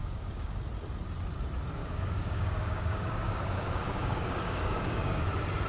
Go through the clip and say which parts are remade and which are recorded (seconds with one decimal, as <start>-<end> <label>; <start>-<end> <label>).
0.0-0.6 remade; 0.6-1.8 recorded; 1.8-5.2 remade; 5.2-5.7 recorded